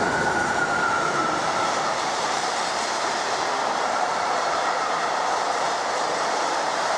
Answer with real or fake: fake